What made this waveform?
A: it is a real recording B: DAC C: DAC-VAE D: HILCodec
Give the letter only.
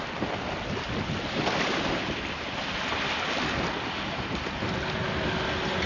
A